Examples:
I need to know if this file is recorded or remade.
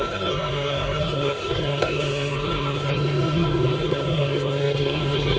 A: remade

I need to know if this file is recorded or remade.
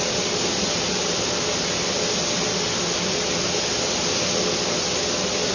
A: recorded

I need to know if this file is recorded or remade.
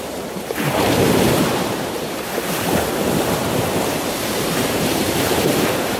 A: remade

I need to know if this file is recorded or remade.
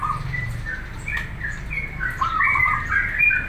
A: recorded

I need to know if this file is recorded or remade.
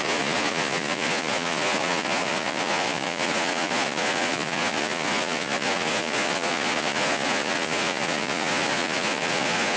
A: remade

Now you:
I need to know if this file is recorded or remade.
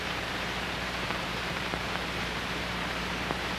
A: remade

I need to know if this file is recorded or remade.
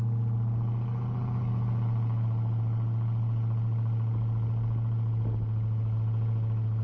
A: recorded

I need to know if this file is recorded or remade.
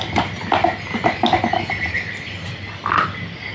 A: recorded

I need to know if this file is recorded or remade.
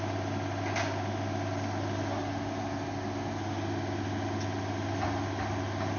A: recorded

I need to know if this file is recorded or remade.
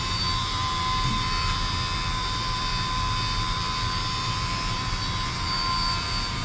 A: remade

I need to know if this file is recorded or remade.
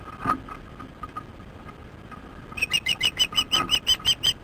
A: recorded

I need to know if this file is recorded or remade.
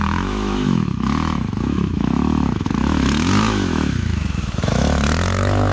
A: remade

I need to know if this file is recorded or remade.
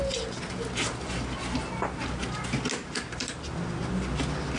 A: recorded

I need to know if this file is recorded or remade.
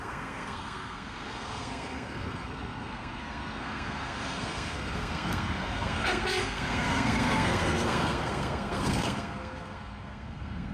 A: remade